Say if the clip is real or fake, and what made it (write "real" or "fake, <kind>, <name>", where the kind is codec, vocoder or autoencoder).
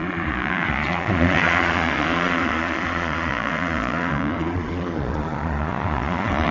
fake, vocoder, Vocos